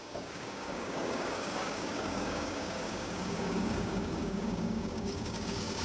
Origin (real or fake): fake